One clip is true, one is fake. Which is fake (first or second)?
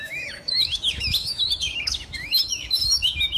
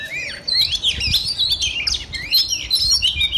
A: first